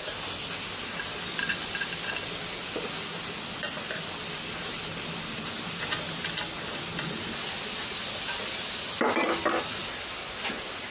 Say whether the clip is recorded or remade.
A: recorded